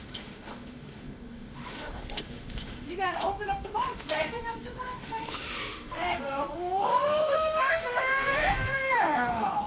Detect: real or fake fake